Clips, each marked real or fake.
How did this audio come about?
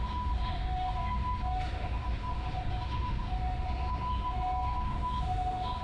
fake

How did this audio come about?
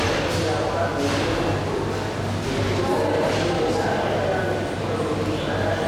real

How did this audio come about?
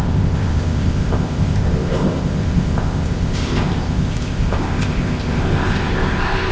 fake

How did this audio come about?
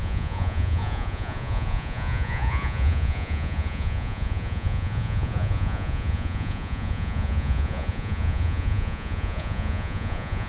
fake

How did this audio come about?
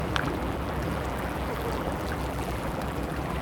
fake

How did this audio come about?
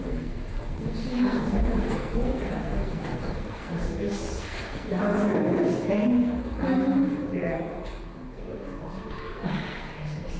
fake